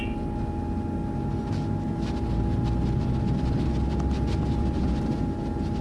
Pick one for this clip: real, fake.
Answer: real